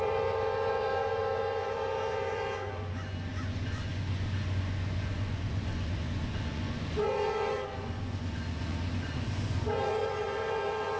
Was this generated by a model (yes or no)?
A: yes